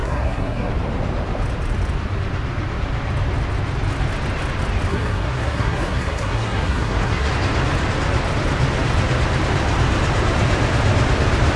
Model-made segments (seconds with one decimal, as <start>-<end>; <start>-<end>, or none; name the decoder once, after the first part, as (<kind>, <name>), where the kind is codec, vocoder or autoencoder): 0.0-0.7 (codec, SNAC); 4.9-7.3